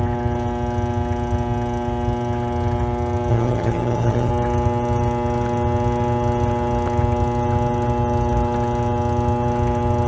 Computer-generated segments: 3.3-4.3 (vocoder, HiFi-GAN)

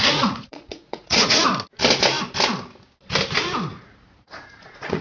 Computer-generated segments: 0.0-1.5 (vocoder, Vocos); 3.7-5.0

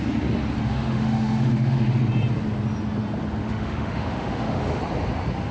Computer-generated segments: 0.6-1.9 (autoencoder, DAC-VAE); 3.4-4.8

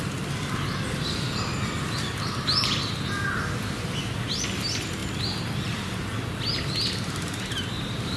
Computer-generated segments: none